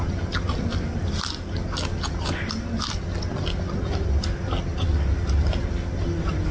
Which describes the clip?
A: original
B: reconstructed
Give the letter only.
A